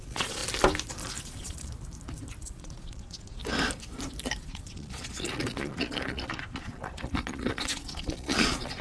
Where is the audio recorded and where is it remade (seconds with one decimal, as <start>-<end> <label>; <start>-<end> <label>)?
0.0-0.4 remade; 0.4-1.2 recorded; 1.2-1.7 remade; 1.7-2.4 recorded; 2.4-3.4 remade; 3.4-4.4 recorded; 4.4-8.8 remade